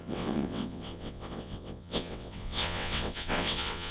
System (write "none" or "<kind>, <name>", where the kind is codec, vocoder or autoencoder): vocoder, WaveNeXt